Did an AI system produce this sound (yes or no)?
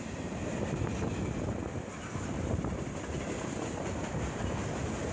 no